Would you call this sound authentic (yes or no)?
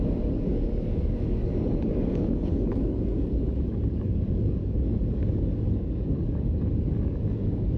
no